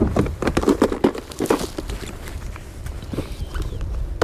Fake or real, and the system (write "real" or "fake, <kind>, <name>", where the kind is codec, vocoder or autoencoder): real